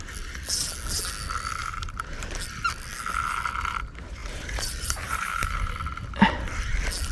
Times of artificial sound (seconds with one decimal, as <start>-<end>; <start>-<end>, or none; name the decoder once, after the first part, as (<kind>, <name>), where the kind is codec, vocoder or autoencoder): 1.6-2.4 (vocoder, BigVGAN v2); 4.2-5.7